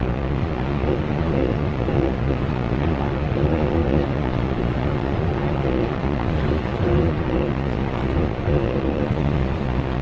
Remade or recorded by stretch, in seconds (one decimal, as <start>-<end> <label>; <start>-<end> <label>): 0.0-10.0 remade